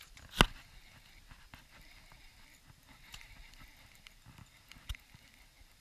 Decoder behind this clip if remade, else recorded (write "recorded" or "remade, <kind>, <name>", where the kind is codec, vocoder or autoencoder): recorded